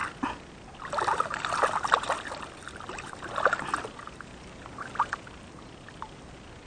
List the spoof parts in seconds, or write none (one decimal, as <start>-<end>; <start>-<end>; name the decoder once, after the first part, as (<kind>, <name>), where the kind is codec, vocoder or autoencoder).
0.0-3.1 (vocoder, BigVGAN v2)